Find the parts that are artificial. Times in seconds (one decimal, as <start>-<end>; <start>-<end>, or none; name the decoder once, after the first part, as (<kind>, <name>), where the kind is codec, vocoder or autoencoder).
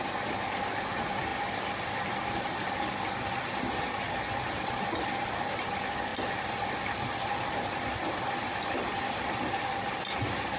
0.0-1.3 (vocoder, BigVGAN v2); 4.8-6.1; 7.0-10.6